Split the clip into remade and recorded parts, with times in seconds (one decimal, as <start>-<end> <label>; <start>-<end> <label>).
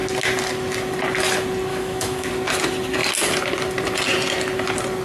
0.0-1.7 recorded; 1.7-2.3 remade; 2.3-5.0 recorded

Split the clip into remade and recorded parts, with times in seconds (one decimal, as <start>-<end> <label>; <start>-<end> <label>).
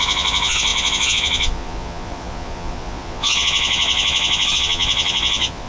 0.0-5.7 remade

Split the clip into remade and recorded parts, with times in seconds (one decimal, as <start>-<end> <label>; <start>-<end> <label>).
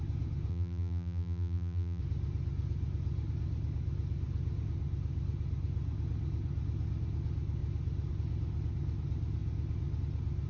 0.0-0.5 recorded; 0.5-2.0 remade; 2.0-10.5 recorded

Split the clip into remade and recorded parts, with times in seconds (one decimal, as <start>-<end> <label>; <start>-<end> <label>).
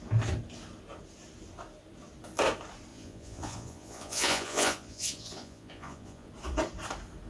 0.0-2.9 recorded; 2.9-6.3 remade; 6.3-7.3 recorded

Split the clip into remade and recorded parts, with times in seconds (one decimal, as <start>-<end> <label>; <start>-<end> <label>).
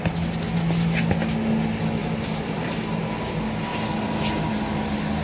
0.0-2.0 recorded; 2.0-3.0 remade; 3.0-5.2 recorded